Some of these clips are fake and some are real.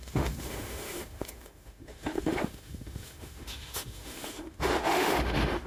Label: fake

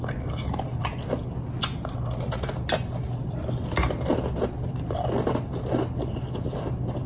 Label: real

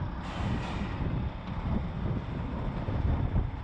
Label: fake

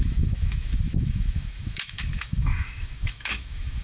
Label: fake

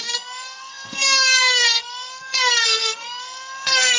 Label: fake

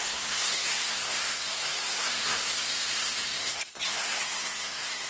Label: fake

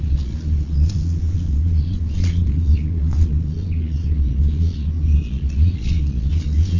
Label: fake